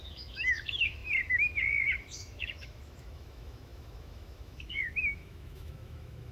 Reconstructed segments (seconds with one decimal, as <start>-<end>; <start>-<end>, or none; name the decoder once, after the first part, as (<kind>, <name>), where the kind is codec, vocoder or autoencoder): 0.0-6.3 (autoencoder, DAC-VAE)